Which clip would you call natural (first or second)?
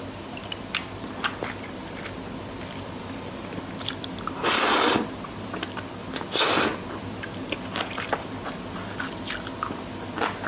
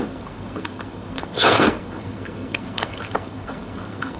first